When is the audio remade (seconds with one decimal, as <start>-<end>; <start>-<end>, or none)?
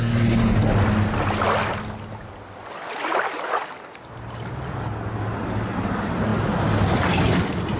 none